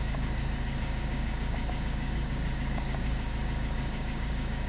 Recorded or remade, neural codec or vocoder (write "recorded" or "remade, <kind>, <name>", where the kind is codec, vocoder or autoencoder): remade, codec, DAC